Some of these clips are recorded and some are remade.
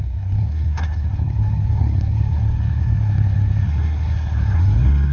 remade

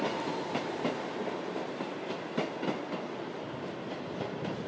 recorded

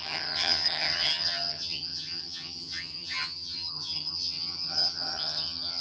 remade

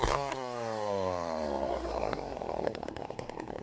remade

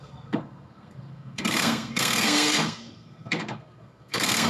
remade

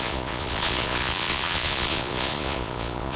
remade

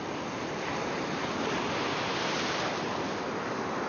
recorded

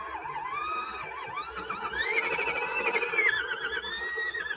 recorded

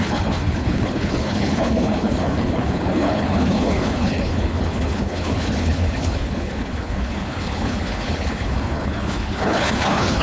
remade